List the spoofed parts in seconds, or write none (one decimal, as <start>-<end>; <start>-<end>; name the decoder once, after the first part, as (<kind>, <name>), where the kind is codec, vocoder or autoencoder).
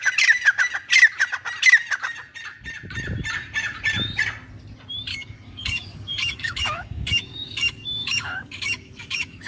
5.1-9.5 (codec, DAC)